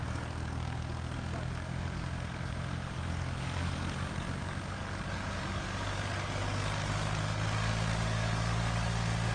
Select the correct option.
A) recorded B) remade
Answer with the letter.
B